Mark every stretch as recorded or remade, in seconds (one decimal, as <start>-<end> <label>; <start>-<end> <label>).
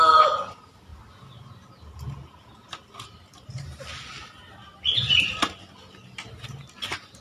0.0-0.9 remade; 0.9-5.2 recorded; 5.2-7.2 remade